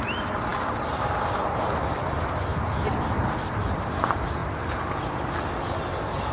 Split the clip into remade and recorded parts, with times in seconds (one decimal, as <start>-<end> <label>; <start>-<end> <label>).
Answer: 0.0-4.4 recorded; 4.4-5.1 remade; 5.1-6.3 recorded